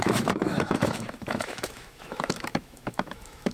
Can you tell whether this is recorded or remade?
remade